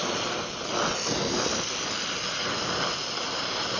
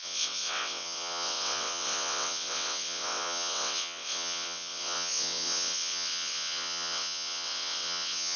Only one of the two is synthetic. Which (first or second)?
second